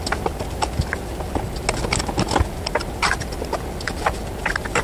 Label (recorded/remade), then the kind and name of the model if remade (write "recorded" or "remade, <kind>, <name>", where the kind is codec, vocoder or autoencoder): recorded